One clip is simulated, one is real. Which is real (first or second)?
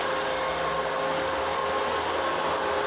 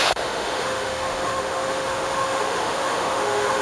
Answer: first